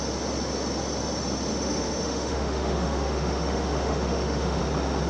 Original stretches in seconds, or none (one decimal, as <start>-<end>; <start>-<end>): 0.0-1.5; 4.6-5.1